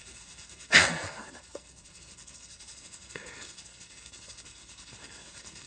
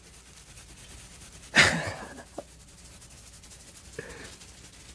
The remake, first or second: first